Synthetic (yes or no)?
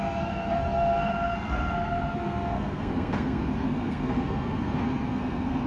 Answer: yes